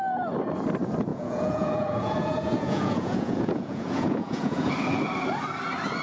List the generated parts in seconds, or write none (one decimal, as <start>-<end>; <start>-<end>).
1.1-4.7